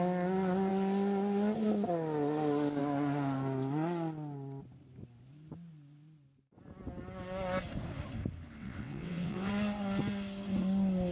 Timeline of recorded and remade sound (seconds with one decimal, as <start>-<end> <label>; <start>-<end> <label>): 0.0-8.6 recorded; 8.6-9.5 remade; 9.5-11.1 recorded

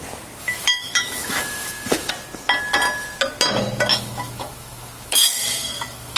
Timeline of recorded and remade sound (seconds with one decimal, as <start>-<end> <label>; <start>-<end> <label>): 0.0-0.4 recorded; 0.4-2.1 remade; 2.1-3.9 recorded; 3.9-6.2 remade

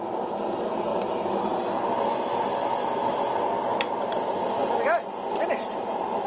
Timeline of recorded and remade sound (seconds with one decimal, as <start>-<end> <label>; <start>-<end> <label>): 0.0-0.9 recorded; 0.9-1.8 remade; 1.8-3.7 recorded; 3.7-4.7 remade; 4.7-6.3 recorded

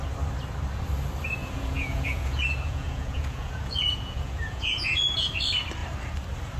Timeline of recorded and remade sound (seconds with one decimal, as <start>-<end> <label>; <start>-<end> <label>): 0.0-1.4 recorded; 1.4-5.3 remade; 5.3-6.6 recorded

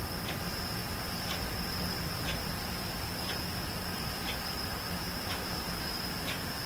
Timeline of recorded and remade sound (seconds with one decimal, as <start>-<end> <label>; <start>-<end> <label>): 0.0-5.0 recorded; 5.0-5.6 remade; 5.6-6.7 recorded

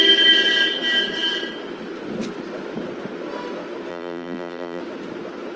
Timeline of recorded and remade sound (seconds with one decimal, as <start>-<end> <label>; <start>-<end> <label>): 0.0-3.9 recorded; 3.9-4.8 remade; 4.8-5.6 recorded

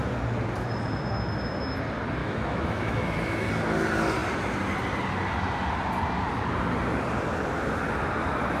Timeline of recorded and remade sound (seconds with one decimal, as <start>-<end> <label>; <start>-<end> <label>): 0.0-2.2 recorded; 2.2-3.5 remade; 3.5-8.6 recorded